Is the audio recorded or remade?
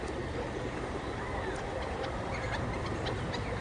recorded